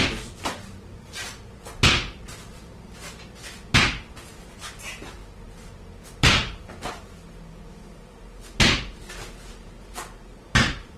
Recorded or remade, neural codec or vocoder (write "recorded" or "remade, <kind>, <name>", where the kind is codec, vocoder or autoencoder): recorded